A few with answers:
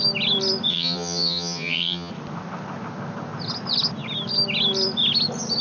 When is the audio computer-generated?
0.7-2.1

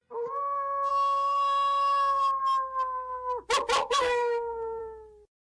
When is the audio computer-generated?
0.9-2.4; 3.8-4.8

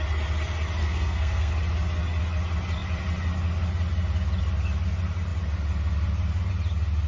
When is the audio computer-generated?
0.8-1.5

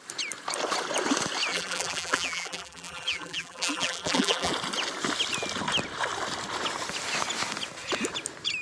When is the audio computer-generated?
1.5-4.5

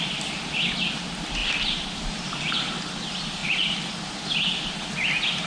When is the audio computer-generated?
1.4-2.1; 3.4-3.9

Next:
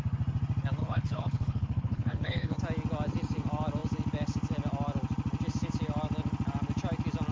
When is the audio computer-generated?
0.8-2.6

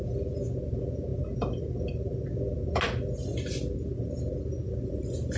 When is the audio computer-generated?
none

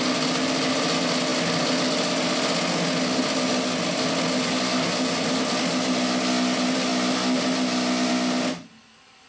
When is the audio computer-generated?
none